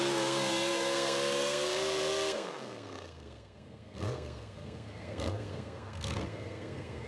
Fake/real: fake